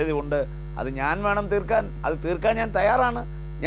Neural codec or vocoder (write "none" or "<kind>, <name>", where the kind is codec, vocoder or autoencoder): none